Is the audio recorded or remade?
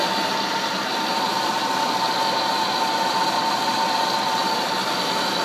remade